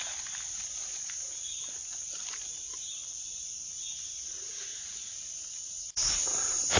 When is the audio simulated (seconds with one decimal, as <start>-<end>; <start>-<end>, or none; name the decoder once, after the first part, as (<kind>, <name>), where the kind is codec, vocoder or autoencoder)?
0.9-3.7 (vocoder, BigVGAN v2); 4.7-6.8